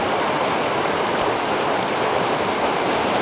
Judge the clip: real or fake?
real